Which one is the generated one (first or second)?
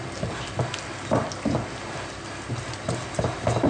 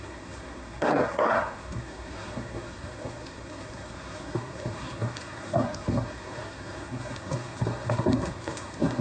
second